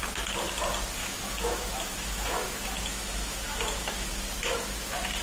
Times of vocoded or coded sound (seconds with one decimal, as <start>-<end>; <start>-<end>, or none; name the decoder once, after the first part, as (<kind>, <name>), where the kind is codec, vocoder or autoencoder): 1.0-4.1 (autoencoder, DAC-VAE)